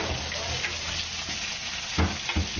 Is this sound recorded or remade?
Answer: recorded